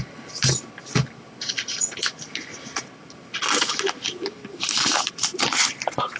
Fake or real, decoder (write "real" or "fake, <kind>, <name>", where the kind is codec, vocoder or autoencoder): real